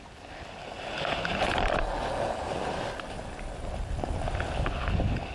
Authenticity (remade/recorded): recorded